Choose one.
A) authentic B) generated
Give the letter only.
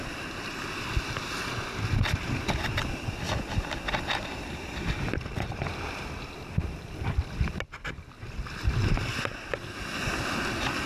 A